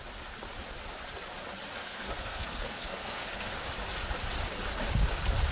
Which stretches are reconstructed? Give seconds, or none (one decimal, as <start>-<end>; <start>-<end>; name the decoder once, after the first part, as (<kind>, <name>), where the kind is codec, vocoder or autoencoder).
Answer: 1.8-3.5 (codec, SNAC)